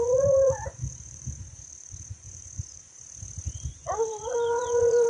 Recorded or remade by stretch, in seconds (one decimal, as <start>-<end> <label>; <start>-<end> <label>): 0.0-5.1 remade

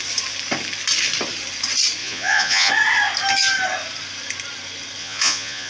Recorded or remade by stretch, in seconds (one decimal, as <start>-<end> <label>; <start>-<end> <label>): 0.0-2.0 recorded; 2.0-2.7 remade; 2.7-5.0 recorded; 5.0-5.7 remade